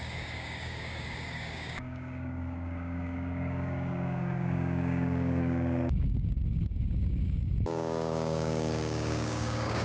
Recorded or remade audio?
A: remade